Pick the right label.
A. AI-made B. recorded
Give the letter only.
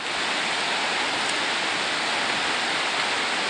B